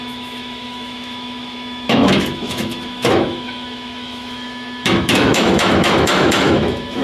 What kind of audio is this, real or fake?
fake